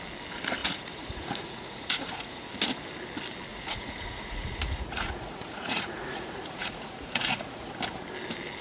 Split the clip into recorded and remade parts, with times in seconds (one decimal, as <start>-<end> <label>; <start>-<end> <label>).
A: 0.0-0.6 recorded; 0.6-2.5 remade; 2.5-3.5 recorded; 3.5-7.7 remade; 7.7-8.6 recorded